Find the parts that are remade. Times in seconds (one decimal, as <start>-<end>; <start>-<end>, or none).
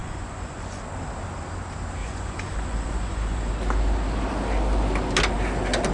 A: 0.0-0.8; 2.0-3.5